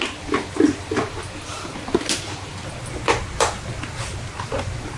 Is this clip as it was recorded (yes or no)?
yes